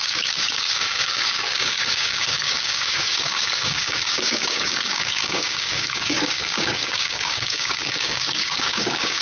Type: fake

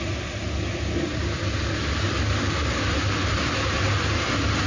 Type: real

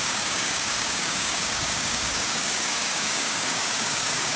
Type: fake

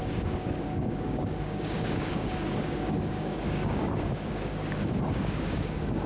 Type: fake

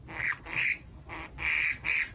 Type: real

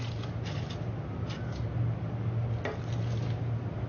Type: real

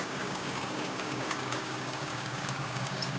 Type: fake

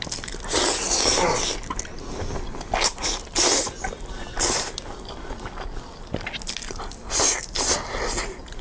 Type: real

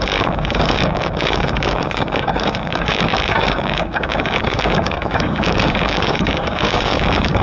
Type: fake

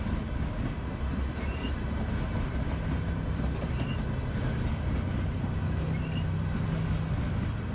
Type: real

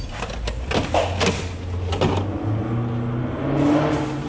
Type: real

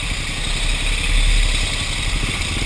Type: real